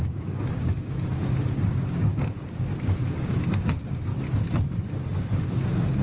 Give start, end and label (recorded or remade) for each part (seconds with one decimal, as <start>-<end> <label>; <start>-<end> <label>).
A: 0.0-2.7 remade; 2.7-3.2 recorded; 3.2-4.1 remade; 4.1-5.5 recorded; 5.5-6.0 remade